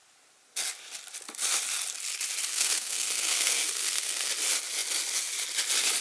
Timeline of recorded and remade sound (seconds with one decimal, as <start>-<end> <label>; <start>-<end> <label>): 0.0-2.5 recorded; 2.5-4.3 remade; 4.3-6.0 recorded